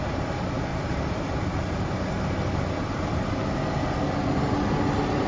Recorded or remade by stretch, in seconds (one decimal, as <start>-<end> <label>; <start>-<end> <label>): 0.0-5.3 recorded